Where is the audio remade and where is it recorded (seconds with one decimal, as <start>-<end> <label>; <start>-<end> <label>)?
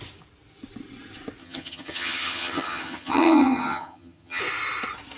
0.0-1.4 recorded; 1.4-4.4 remade; 4.4-5.2 recorded